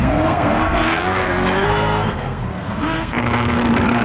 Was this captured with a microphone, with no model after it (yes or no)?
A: no